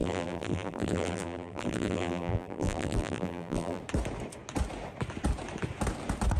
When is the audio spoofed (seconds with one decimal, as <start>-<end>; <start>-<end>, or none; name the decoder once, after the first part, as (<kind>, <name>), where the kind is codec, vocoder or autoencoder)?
0.0-3.8 (vocoder, BigVGAN v2)